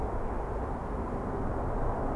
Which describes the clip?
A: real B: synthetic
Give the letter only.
A